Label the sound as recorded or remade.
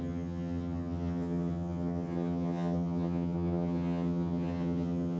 remade